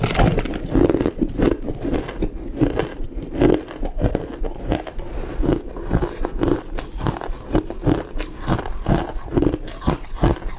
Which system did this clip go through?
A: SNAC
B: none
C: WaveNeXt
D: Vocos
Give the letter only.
B